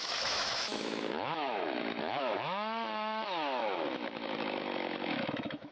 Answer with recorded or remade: remade